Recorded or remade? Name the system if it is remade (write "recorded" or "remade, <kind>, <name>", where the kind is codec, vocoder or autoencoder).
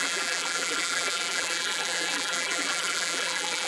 remade, vocoder, BigVGAN v2